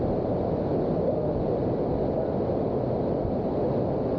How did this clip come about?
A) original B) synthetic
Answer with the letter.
A